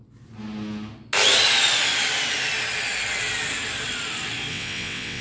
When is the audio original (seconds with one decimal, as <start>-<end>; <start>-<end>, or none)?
0.0-4.5